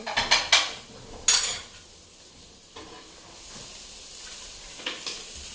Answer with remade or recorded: recorded